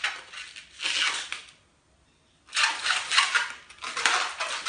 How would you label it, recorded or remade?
recorded